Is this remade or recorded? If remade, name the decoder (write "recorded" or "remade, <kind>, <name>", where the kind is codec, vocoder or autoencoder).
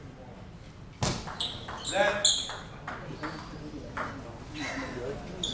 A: recorded